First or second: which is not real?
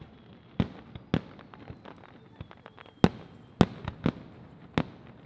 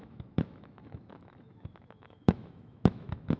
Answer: second